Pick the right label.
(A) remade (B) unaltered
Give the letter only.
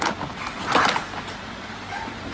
B